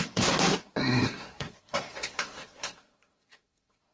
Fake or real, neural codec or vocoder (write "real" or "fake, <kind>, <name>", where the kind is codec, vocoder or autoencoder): fake, codec, SNAC